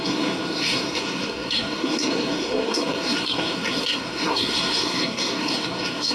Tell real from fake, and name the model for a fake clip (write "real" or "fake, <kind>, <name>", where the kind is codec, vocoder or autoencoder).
fake, codec, SNAC